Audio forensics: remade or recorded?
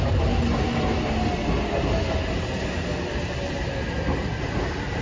recorded